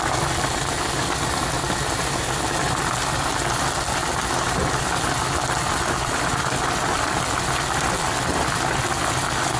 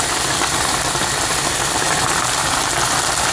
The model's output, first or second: second